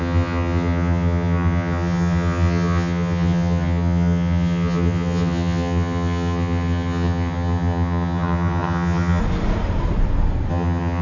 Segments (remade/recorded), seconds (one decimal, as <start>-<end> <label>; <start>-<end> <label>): 0.0-9.2 remade; 9.2-10.5 recorded; 10.5-11.0 remade